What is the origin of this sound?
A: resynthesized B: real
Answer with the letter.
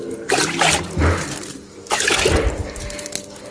B